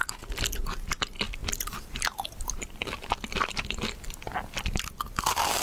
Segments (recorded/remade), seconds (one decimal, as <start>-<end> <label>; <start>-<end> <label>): 0.0-1.4 recorded; 1.4-4.8 remade; 4.8-5.6 recorded